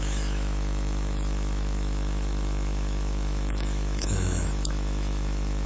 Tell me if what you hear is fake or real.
fake